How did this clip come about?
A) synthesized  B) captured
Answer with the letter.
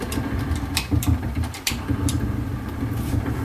A